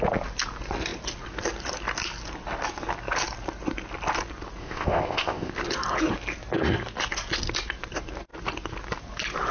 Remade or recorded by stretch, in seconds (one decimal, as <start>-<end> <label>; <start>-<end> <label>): 0.0-4.6 recorded; 4.6-5.5 remade; 5.5-9.5 recorded